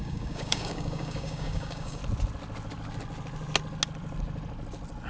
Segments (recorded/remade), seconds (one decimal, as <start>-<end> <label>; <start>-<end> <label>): 0.0-2.0 remade; 2.0-5.1 recorded